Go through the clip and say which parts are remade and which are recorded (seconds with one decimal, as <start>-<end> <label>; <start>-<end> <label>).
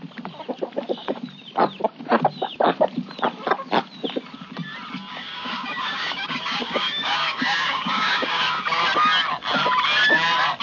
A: 0.0-5.1 recorded; 5.1-8.4 remade; 8.4-10.6 recorded